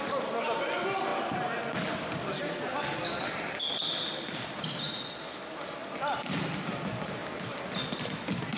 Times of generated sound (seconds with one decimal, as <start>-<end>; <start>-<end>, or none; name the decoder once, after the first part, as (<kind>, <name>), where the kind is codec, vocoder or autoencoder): none